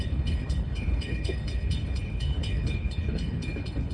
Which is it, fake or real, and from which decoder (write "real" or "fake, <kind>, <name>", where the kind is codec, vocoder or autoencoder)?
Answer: fake, codec, HILCodec